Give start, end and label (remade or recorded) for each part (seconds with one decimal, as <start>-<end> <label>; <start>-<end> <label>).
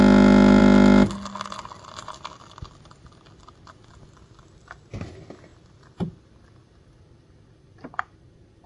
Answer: 0.0-8.7 recorded